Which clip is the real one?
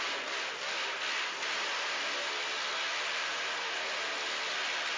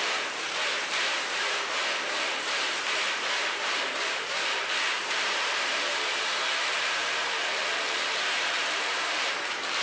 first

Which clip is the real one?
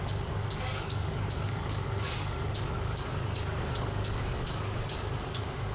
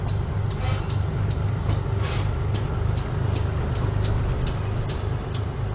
second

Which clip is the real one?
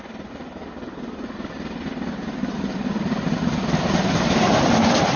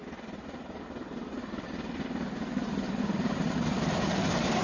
second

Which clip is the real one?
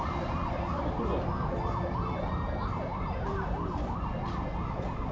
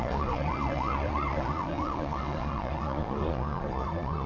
first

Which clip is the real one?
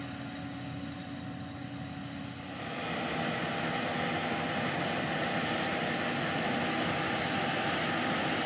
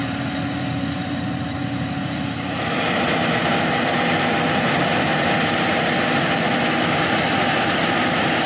first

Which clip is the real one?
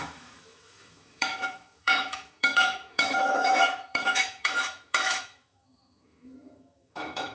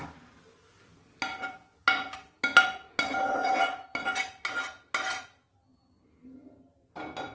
second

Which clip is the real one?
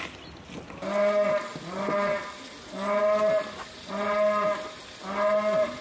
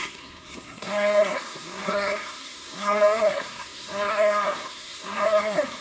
first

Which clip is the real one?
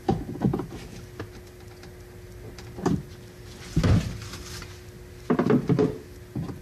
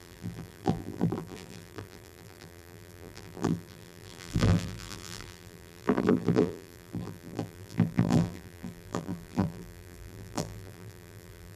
first